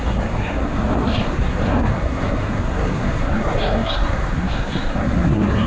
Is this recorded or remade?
remade